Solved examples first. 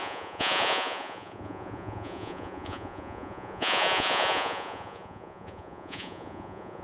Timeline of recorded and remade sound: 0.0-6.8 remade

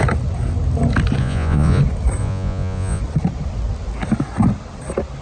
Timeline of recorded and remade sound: 0.0-1.2 recorded; 1.2-1.8 remade; 1.8-2.2 recorded; 2.2-3.0 remade; 3.0-5.2 recorded

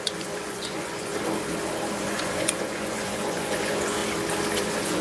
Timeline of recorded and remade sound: 0.0-1.1 remade; 1.1-2.0 recorded; 2.0-4.0 remade; 4.0-4.6 recorded; 4.6-5.0 remade

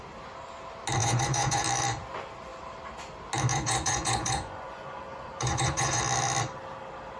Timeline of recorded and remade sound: 0.0-1.0 recorded; 1.0-1.6 remade; 1.6-3.5 recorded; 3.5-6.0 remade; 6.0-7.2 recorded

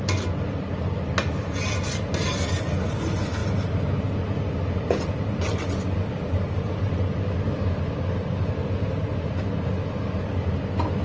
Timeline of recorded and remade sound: 0.0-11.0 recorded

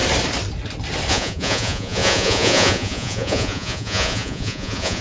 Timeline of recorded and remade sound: 0.0-1.1 recorded; 1.1-5.0 remade

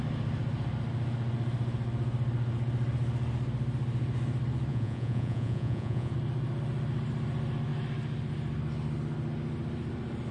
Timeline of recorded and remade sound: 0.0-4.7 recorded; 4.7-6.1 remade; 6.1-10.3 recorded